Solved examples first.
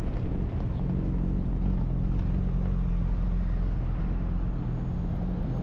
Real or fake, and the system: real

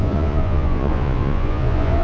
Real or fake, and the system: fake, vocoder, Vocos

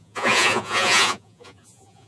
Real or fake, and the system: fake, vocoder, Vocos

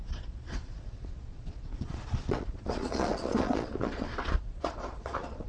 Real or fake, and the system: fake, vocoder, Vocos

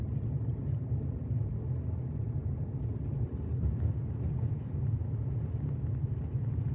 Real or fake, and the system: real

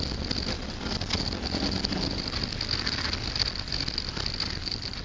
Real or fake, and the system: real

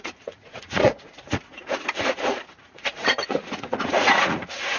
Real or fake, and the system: fake, vocoder, Vocos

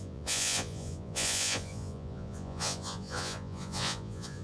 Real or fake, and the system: fake, vocoder, Vocos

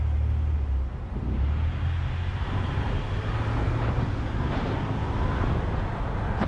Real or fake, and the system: real